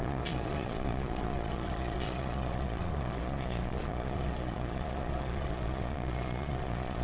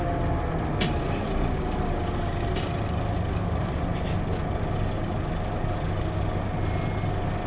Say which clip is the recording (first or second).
second